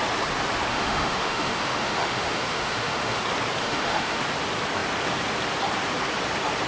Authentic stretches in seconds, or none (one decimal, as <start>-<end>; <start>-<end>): 0.0-0.7; 3.2-3.6; 4.2-6.7